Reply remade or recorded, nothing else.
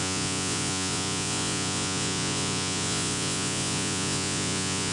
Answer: remade